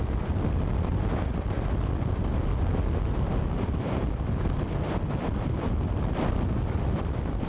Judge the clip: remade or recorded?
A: recorded